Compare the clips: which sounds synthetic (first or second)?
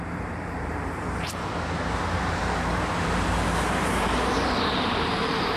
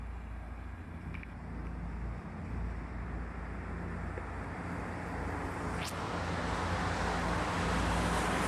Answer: first